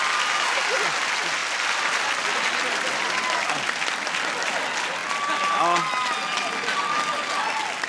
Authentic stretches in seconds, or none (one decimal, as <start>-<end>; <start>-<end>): 0.0-7.9